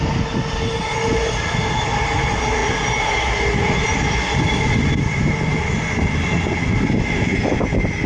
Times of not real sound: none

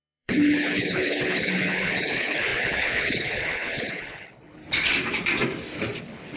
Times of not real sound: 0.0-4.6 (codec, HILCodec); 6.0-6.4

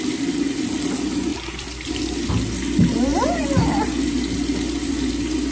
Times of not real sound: 1.3-2.3 (vocoder, BigVGAN v2); 3.1-5.1

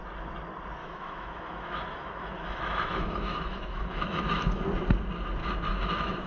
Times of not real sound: 0.8-4.6 (autoencoder, DAC-VAE); 5.4-6.3